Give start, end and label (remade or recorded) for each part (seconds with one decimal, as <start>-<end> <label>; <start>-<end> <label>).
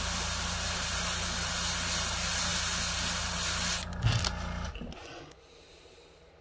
0.0-5.0 recorded; 5.0-5.5 remade; 5.5-6.4 recorded